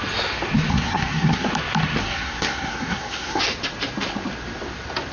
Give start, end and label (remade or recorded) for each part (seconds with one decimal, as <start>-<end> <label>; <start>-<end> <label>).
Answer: 0.0-0.7 recorded; 0.7-1.5 remade; 1.5-2.0 recorded; 2.0-3.4 remade; 3.4-5.1 recorded